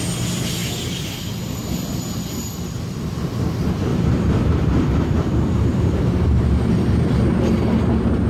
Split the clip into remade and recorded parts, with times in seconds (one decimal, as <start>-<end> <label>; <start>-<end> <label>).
0.0-3.9 recorded; 3.9-6.1 remade; 6.1-8.3 recorded